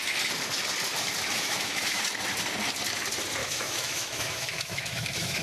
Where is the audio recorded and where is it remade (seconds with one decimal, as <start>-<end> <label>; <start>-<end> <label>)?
0.0-1.3 recorded; 1.3-2.0 remade; 2.0-3.4 recorded; 3.4-5.4 remade